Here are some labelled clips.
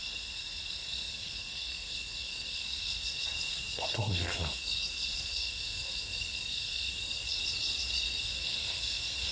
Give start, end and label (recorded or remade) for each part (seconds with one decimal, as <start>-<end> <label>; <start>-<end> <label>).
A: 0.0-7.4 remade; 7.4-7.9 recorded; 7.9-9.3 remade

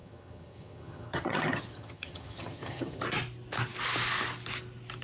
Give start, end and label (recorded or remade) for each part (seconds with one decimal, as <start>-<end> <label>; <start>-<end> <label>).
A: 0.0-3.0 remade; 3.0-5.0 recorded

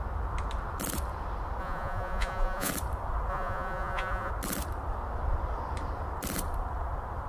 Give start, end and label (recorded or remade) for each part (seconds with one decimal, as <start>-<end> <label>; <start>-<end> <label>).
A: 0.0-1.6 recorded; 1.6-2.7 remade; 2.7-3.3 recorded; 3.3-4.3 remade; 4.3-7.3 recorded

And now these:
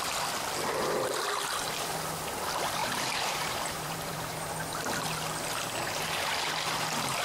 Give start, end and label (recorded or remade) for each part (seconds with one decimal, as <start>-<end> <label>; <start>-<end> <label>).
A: 0.0-2.8 recorded; 2.8-4.4 remade; 4.4-7.2 recorded

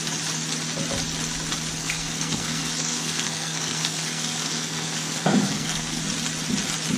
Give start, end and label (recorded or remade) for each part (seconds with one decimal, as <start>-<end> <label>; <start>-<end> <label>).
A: 0.0-1.8 recorded; 1.8-6.0 remade; 6.0-7.0 recorded

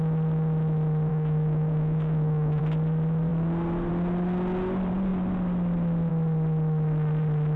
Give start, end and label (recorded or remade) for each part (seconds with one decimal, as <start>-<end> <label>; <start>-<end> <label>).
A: 0.0-1.1 recorded; 1.1-2.6 remade; 2.6-7.6 recorded

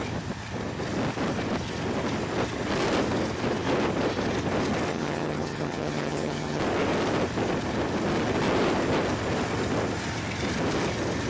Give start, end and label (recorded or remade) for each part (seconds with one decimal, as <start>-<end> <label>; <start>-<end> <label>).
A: 0.0-4.9 recorded; 4.9-6.6 remade; 6.6-11.3 recorded

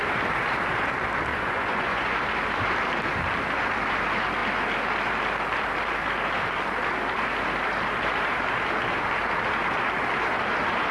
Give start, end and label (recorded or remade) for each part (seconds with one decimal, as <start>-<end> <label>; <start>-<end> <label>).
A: 0.0-1.3 recorded; 1.3-2.2 remade; 2.2-10.9 recorded